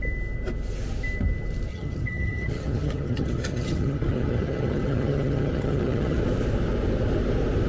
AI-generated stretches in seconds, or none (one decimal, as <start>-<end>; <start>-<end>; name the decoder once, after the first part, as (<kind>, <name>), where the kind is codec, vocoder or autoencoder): 1.7-6.2 (vocoder, HiFi-GAN)